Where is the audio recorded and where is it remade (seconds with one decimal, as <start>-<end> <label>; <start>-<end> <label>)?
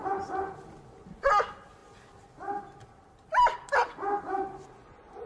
0.0-5.3 recorded